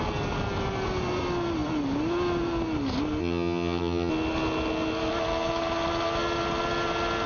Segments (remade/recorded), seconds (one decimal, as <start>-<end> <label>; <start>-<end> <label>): 0.0-3.2 recorded; 3.2-4.1 remade; 4.1-7.3 recorded